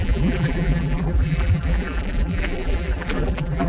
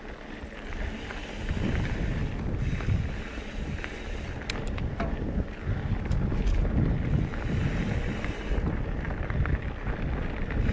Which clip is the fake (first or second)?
first